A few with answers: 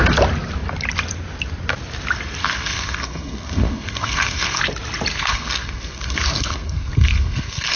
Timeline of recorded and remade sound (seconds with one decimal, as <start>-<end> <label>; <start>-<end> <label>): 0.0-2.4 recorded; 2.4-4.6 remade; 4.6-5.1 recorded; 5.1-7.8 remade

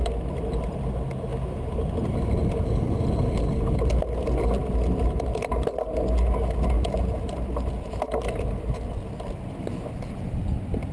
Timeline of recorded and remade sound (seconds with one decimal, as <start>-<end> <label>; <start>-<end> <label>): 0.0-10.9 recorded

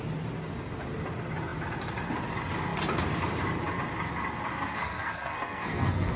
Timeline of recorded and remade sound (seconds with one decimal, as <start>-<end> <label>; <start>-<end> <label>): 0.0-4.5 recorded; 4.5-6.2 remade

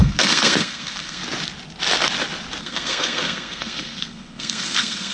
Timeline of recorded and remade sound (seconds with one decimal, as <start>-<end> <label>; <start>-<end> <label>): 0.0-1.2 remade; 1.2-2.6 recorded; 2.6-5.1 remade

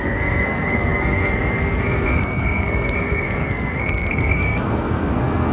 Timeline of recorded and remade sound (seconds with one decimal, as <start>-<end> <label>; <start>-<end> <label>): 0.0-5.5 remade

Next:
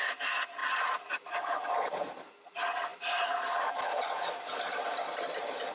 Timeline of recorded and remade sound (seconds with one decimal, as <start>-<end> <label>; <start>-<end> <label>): 0.0-5.7 recorded

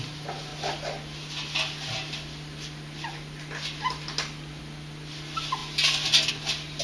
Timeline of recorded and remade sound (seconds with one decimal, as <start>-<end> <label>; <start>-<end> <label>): 0.0-6.8 recorded